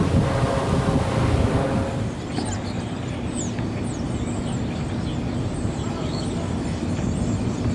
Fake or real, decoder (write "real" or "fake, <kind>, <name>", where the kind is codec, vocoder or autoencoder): real